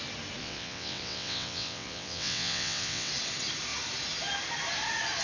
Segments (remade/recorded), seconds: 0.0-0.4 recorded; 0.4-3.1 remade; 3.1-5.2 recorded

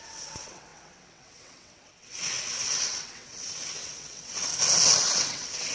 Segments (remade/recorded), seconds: 0.0-4.5 remade; 4.5-5.0 recorded; 5.0-5.7 remade

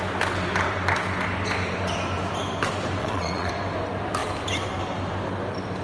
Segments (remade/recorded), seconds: 0.0-3.0 recorded; 3.0-3.5 remade; 3.5-5.8 recorded